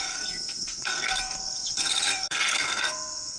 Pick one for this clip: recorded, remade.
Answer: remade